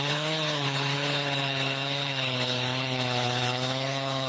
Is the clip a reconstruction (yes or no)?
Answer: yes